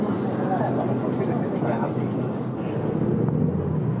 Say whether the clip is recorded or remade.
recorded